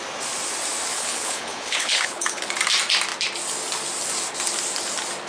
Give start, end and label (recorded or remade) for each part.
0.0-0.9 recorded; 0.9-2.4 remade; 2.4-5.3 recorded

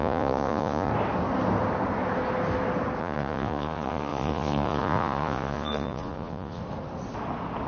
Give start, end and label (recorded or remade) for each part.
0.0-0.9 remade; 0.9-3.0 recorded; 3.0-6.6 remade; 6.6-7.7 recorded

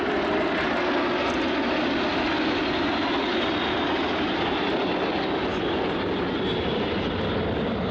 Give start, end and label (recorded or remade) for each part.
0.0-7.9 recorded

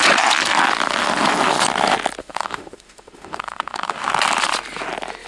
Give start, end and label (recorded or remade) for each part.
0.0-2.2 recorded; 2.2-4.1 remade; 4.1-5.3 recorded

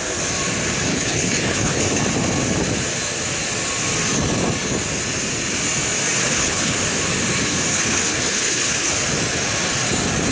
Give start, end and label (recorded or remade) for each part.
0.0-0.9 recorded; 0.9-2.0 remade; 2.0-6.2 recorded; 6.2-6.8 remade; 6.8-7.7 recorded; 7.7-8.9 remade; 8.9-10.3 recorded

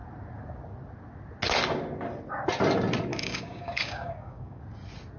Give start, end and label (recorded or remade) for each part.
0.0-3.1 recorded; 3.1-4.6 remade; 4.6-5.2 recorded

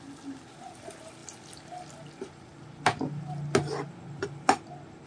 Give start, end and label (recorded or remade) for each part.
0.0-5.1 recorded

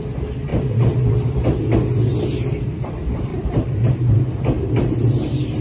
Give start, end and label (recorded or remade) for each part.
0.0-0.5 recorded; 0.5-1.6 remade; 1.6-3.3 recorded; 3.3-4.4 remade; 4.4-5.6 recorded